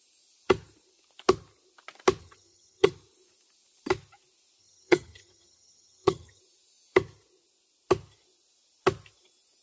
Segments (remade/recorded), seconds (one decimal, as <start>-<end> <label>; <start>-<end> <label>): 0.0-2.2 recorded; 2.2-2.9 remade; 2.9-4.6 recorded; 4.6-6.4 remade; 6.4-9.6 recorded